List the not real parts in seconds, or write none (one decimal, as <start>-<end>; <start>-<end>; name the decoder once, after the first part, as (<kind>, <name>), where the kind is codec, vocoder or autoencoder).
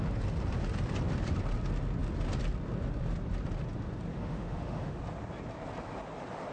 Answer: 4.1-5.0 (autoencoder, DAC-VAE)